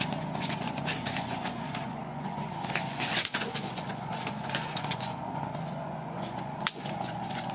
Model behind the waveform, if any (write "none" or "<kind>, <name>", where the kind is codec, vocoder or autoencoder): vocoder, Vocos